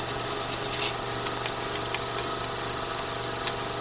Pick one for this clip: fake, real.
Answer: real